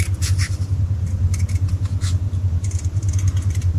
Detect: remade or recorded remade